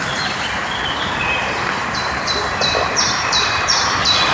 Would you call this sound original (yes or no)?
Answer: no